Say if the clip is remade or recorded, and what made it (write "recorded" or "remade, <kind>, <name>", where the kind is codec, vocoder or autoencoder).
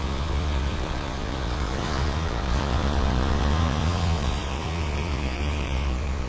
remade, vocoder, Vocos